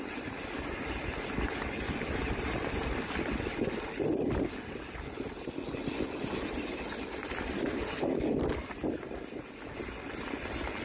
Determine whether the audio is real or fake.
real